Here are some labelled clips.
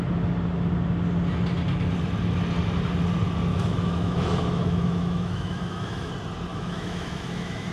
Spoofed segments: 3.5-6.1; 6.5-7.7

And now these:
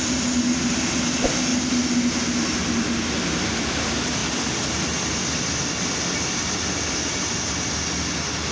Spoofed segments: none